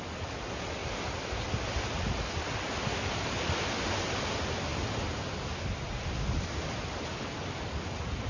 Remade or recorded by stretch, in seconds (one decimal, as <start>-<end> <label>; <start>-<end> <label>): 0.0-8.3 recorded